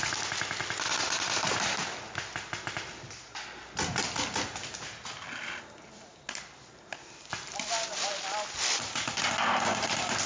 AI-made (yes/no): no